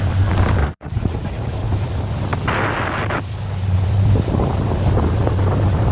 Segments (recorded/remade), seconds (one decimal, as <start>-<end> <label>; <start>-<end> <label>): 0.0-0.6 recorded; 0.6-1.5 remade; 1.5-5.9 recorded